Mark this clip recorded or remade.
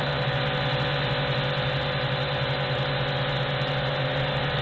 recorded